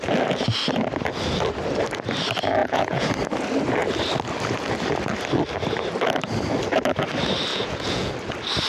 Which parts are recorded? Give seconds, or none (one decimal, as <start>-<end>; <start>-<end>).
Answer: 0.0-2.6; 3.1-7.5; 8.1-8.7